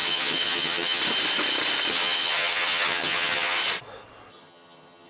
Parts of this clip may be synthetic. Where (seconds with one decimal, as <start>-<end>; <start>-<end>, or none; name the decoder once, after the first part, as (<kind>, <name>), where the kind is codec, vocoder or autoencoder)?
0.0-1.0 (vocoder, HiFi-GAN); 1.9-3.6; 4.3-5.1